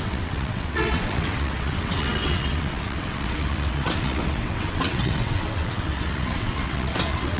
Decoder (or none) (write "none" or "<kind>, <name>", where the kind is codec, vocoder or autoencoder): vocoder, WaveNeXt